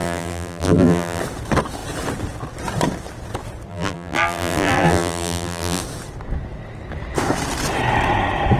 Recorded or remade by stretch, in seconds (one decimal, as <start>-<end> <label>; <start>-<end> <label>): 0.0-1.2 remade; 1.2-3.7 recorded; 3.7-5.8 remade; 5.8-8.6 recorded